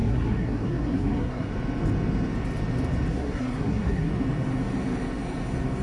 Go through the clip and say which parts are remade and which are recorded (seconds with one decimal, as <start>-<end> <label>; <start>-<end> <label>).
0.0-1.5 remade; 1.5-3.1 recorded; 3.1-4.1 remade; 4.1-5.8 recorded